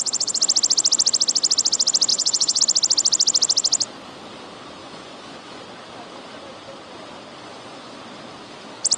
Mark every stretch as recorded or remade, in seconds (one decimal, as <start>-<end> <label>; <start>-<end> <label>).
0.0-2.1 recorded; 2.1-2.6 remade; 2.6-4.8 recorded; 4.8-5.6 remade; 5.6-7.4 recorded; 7.4-8.0 remade; 8.0-9.0 recorded